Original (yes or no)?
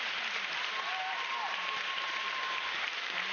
no